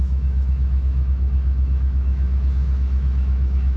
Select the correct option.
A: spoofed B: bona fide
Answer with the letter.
A